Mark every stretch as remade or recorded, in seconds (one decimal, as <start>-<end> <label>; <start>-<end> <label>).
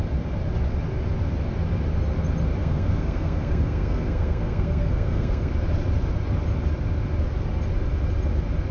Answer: 0.0-2.6 recorded; 2.6-5.5 remade; 5.5-8.7 recorded